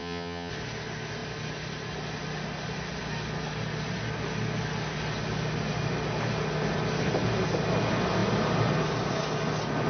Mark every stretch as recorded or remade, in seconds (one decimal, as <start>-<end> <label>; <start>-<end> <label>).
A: 0.0-0.5 remade; 0.5-9.9 recorded

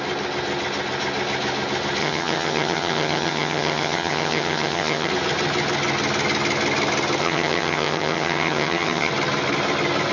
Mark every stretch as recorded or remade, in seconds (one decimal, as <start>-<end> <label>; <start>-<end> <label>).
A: 0.0-2.0 recorded; 2.0-5.1 remade; 5.1-7.2 recorded; 7.2-9.1 remade; 9.1-10.1 recorded

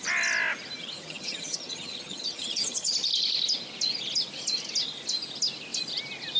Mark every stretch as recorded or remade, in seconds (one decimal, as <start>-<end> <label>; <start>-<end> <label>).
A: 0.0-0.8 recorded; 0.8-2.9 remade; 2.9-6.4 recorded

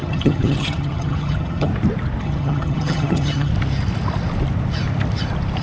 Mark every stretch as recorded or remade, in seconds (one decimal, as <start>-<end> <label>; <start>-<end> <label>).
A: 0.0-1.7 remade; 1.7-2.2 recorded; 2.2-3.5 remade; 3.5-5.6 recorded